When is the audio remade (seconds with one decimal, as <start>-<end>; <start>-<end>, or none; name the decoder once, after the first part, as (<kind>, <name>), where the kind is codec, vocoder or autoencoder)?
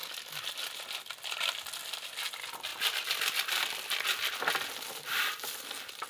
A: 0.0-0.5 (vocoder, BigVGAN v2); 2.7-6.1